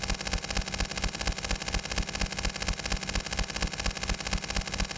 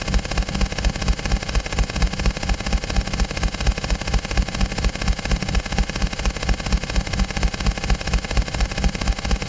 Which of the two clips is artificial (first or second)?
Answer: second